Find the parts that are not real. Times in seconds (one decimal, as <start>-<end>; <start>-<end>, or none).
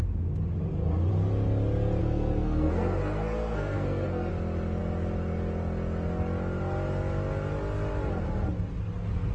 2.0-4.3